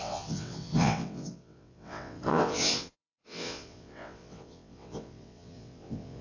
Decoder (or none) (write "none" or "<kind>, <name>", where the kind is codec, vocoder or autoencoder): vocoder, WaveNeXt